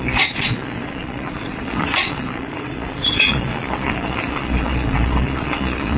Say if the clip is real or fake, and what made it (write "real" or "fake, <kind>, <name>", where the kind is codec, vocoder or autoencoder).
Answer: fake, vocoder, Vocos